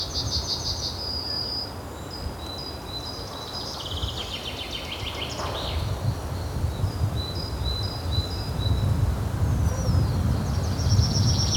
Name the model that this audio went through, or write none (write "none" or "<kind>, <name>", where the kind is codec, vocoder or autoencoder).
none